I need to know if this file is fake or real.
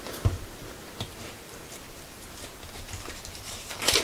fake